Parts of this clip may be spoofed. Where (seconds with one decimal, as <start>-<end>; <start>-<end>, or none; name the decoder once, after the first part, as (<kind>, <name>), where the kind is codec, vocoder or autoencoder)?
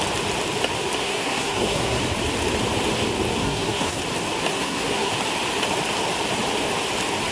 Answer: 1.0-2.0 (codec, SNAC); 3.4-4.0; 4.5-5.1